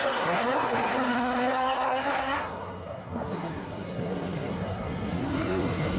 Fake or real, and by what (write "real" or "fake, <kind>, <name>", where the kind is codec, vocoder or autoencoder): fake, codec, SNAC